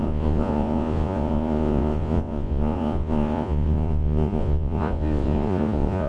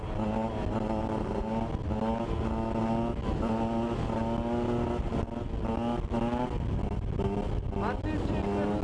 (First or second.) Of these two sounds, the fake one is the first